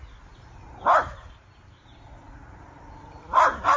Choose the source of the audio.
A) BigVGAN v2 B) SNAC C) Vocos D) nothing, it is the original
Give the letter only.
D